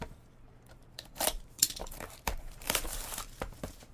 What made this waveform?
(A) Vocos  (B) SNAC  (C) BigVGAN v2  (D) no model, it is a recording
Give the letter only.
C